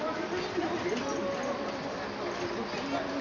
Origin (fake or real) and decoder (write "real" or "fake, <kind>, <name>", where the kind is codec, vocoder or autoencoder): real